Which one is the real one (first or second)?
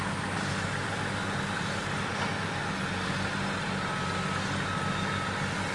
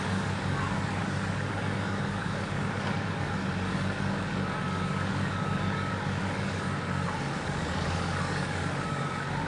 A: first